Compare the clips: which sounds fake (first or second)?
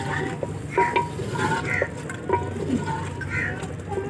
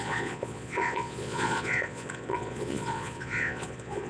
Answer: second